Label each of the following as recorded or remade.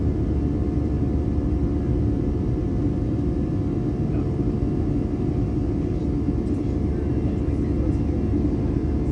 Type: recorded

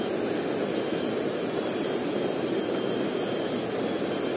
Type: recorded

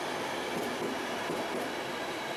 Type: recorded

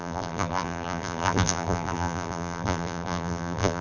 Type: remade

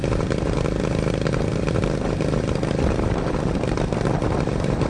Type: recorded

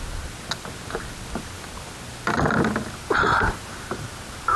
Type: recorded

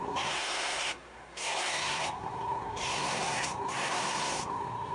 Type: remade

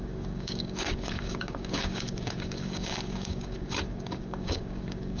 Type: remade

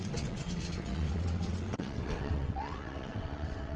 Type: remade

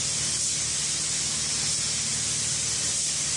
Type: recorded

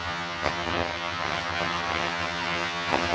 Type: remade